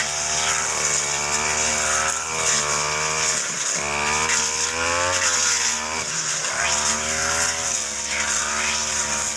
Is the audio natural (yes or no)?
yes